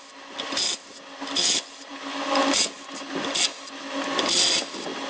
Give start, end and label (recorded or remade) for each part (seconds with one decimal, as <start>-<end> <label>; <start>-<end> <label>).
0.0-5.1 recorded